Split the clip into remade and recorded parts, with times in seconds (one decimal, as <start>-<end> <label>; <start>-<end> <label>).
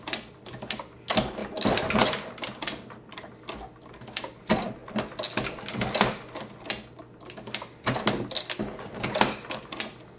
0.0-10.2 recorded